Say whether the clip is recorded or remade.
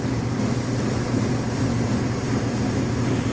recorded